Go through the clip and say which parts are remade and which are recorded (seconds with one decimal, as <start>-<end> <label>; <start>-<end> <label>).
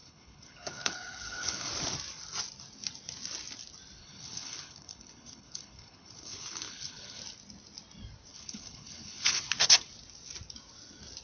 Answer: 0.0-1.7 remade; 1.7-4.0 recorded; 4.0-7.2 remade; 7.2-8.3 recorded; 8.3-9.4 remade; 9.4-11.2 recorded